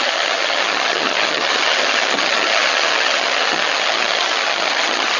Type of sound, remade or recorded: remade